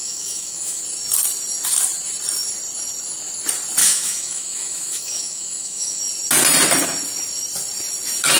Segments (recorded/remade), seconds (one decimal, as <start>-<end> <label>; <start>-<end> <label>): 0.0-0.8 remade; 0.8-3.8 recorded; 3.8-6.0 remade; 6.0-8.4 recorded